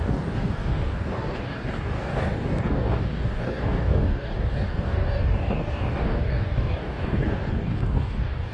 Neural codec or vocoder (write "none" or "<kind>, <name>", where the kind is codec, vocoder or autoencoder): codec, DAC